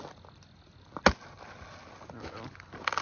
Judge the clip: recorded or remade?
recorded